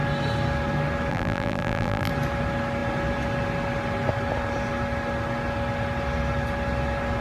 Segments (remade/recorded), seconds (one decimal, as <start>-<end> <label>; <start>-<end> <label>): 0.0-1.1 recorded; 1.1-2.1 remade; 2.1-7.2 recorded